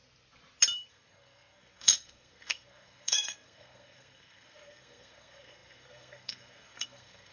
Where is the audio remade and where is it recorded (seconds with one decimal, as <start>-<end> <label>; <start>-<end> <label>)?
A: 0.0-0.9 recorded; 0.9-7.3 remade

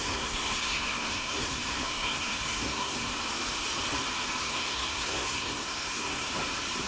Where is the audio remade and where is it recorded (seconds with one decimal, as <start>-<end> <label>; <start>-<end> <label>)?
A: 0.0-3.1 remade; 3.1-4.4 recorded; 4.4-6.3 remade; 6.3-6.9 recorded

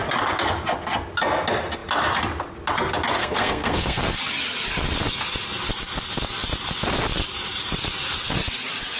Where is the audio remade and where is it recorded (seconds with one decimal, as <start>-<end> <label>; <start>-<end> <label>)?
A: 0.0-3.2 recorded; 3.2-4.0 remade; 4.0-9.0 recorded

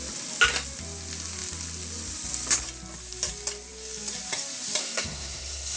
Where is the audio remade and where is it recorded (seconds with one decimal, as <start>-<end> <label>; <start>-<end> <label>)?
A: 0.0-4.8 recorded; 4.8-5.8 remade

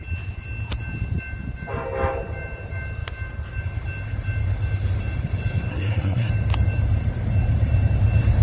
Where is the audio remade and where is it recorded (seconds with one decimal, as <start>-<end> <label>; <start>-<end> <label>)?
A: 0.0-5.7 recorded; 5.7-6.3 remade; 6.3-8.4 recorded

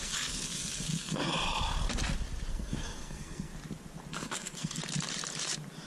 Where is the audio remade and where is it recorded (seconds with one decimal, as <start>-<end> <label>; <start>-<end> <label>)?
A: 0.0-1.2 remade; 1.2-2.5 recorded; 2.5-3.5 remade; 3.5-4.1 recorded; 4.1-4.8 remade; 4.8-5.9 recorded

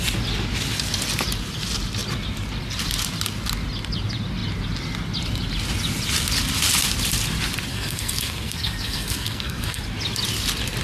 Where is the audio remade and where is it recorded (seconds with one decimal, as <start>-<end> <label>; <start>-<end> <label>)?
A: 0.0-7.7 recorded; 7.7-9.8 remade; 9.8-10.8 recorded